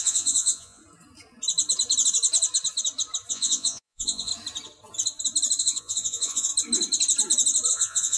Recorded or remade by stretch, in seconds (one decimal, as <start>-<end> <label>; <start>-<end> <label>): 0.0-0.8 remade; 0.8-3.3 recorded; 3.3-4.3 remade; 4.3-5.6 recorded; 5.6-6.5 remade; 6.5-7.7 recorded; 7.7-8.2 remade